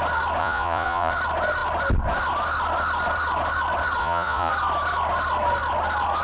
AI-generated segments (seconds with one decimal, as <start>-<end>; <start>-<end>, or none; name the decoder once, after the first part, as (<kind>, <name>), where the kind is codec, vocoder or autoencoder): 0.4-1.1 (vocoder, Vocos); 4.0-4.5